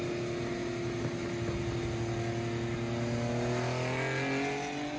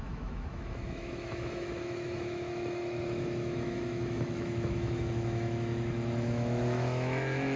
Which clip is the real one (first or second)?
first